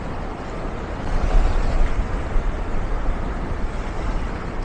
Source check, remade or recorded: recorded